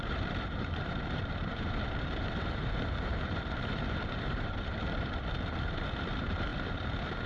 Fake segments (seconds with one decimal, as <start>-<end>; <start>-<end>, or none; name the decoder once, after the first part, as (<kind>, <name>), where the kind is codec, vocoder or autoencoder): 0.0-7.3 (vocoder, BigVGAN v2)